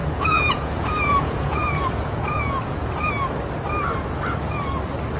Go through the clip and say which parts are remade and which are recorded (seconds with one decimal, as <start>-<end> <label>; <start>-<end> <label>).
0.0-3.1 remade; 3.1-5.2 recorded

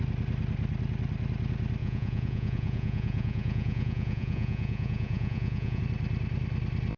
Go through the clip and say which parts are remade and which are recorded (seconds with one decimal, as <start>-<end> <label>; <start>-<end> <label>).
0.0-1.8 recorded; 1.8-5.8 remade; 5.8-7.0 recorded

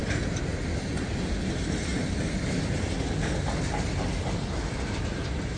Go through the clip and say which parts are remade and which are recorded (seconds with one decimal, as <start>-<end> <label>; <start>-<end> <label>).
0.0-5.6 recorded

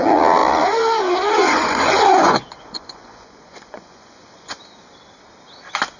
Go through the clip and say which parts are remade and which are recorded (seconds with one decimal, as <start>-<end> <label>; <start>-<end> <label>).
0.0-1.4 recorded; 1.4-4.6 remade; 4.6-6.0 recorded